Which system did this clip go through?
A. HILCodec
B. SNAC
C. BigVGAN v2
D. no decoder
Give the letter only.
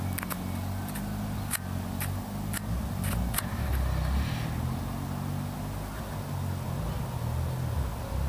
D